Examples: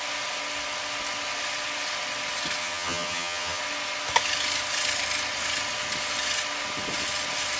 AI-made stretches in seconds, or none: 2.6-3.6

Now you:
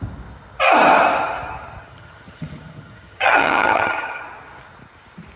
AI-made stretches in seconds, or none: 1.8-4.2

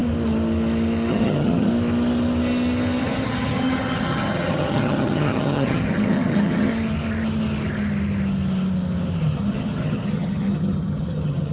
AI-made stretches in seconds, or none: 1.1-1.7; 3.0-6.7; 9.2-11.5

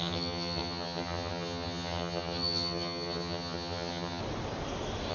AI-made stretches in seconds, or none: 0.0-4.2

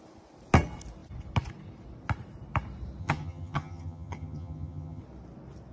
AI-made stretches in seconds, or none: 3.0-5.0

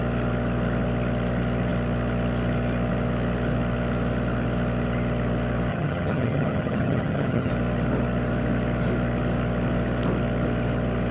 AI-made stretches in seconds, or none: 5.7-7.5